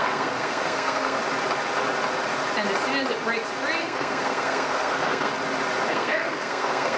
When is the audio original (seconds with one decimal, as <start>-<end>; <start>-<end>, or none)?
1.2-3.8; 5.3-5.9